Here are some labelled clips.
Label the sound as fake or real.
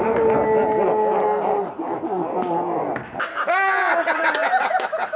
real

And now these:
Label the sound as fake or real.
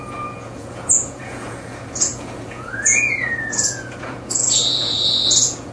fake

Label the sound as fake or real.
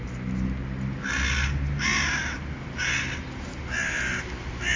real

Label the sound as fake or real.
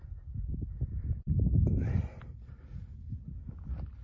real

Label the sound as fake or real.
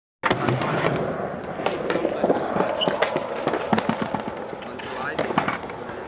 real